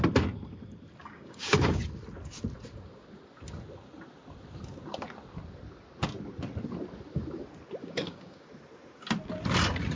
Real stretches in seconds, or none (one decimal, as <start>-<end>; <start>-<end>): 0.0-1.0; 1.8-7.8; 8.5-9.9